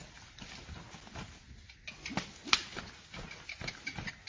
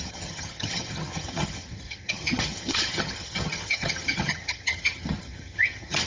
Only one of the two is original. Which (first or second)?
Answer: first